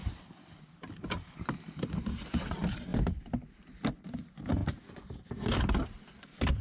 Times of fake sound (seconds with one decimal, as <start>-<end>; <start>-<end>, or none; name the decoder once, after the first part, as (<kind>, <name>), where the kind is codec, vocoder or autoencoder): 1.3-4.6 (vocoder, BigVGAN v2); 5.3-6.6